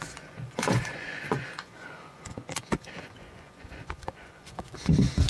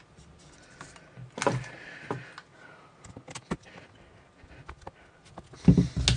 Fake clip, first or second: first